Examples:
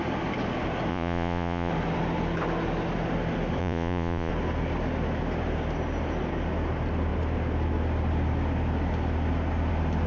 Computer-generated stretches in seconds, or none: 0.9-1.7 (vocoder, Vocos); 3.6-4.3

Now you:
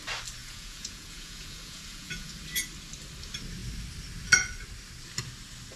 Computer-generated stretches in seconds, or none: 0.4-2.3 (vocoder, Vocos)